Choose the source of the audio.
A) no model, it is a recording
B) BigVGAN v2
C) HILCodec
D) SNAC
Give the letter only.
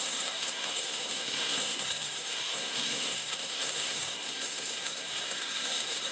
D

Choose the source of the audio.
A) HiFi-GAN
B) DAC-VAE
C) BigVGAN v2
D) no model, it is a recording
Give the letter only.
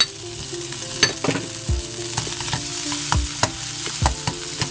D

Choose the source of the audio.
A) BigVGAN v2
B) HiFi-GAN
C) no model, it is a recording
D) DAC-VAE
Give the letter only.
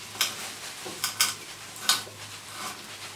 C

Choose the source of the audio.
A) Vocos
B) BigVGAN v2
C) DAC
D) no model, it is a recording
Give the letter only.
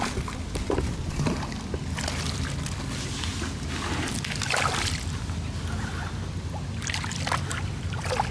D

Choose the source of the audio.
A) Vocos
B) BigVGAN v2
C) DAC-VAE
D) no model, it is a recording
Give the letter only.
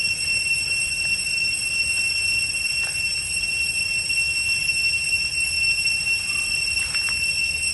D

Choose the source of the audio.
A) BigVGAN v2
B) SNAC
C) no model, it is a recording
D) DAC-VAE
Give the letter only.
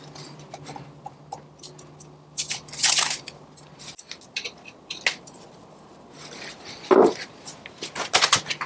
C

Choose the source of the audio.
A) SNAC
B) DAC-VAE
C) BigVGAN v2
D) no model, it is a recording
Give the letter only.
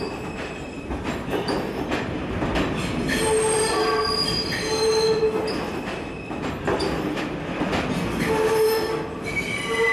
D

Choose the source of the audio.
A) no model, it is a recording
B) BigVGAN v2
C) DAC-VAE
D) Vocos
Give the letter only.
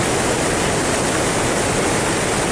A